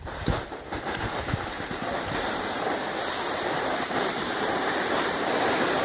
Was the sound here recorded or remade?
remade